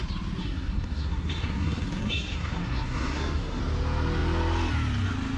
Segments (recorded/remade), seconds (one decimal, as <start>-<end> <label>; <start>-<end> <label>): 0.0-0.4 recorded; 0.4-3.6 remade; 3.6-5.4 recorded